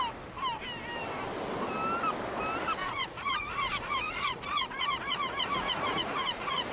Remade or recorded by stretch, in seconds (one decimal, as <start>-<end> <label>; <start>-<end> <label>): 0.0-2.8 recorded; 2.8-6.7 remade